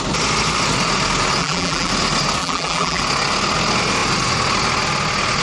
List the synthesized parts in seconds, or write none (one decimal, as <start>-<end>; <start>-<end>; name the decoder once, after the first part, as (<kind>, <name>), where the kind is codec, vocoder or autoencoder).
1.4-1.9 (vocoder, BigVGAN v2); 2.4-3.0